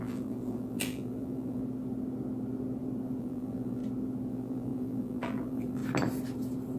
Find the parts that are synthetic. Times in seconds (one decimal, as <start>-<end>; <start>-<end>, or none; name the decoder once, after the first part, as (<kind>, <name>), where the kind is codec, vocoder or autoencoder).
0.0-1.6 (vocoder, BigVGAN v2); 3.2-3.8; 4.3-5.8